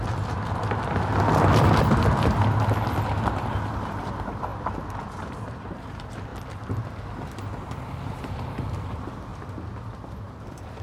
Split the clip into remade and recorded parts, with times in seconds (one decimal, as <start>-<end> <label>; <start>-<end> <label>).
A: 0.0-4.0 recorded; 4.0-4.5 remade; 4.5-5.2 recorded; 5.2-6.3 remade; 6.3-7.5 recorded; 7.5-9.3 remade; 9.3-10.1 recorded; 10.1-10.8 remade